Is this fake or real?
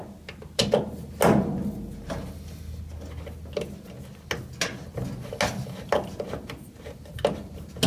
real